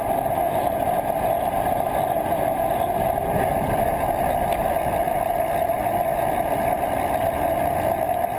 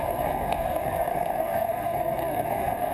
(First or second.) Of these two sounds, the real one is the first